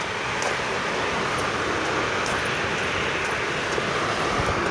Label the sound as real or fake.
real